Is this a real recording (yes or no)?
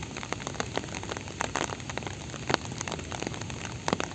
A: yes